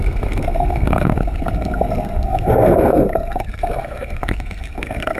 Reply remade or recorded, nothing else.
remade